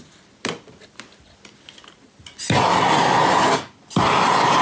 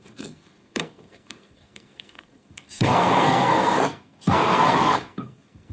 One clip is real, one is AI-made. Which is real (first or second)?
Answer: first